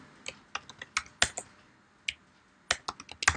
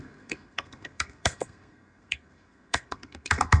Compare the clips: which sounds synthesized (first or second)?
second